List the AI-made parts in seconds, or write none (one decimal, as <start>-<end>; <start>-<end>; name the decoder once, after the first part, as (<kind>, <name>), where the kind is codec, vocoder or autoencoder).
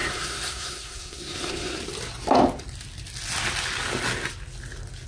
0.0-1.8 (codec, SNAC)